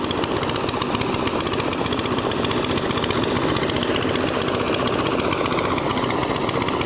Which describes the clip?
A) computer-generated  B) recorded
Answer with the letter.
B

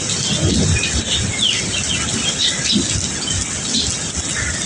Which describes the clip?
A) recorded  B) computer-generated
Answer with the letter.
A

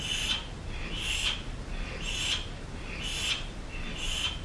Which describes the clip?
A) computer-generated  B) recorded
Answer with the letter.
B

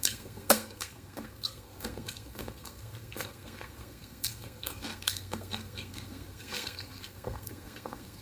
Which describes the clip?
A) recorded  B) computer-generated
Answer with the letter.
B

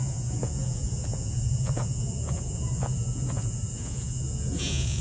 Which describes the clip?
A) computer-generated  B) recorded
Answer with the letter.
A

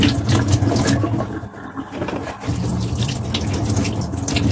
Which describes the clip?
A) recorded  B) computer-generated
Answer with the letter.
A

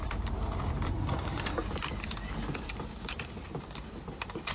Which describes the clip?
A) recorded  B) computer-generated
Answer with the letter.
B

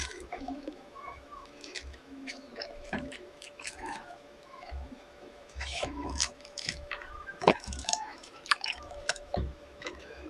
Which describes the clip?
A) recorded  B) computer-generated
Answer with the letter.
B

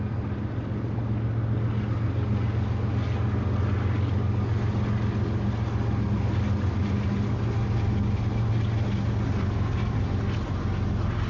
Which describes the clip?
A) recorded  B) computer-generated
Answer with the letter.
A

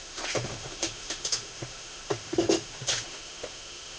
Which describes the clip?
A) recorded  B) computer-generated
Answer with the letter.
B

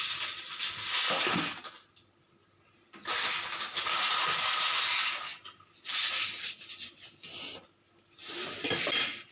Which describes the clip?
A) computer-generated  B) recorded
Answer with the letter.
B